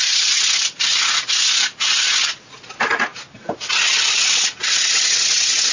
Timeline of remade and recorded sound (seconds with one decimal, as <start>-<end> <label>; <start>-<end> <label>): 0.0-5.7 recorded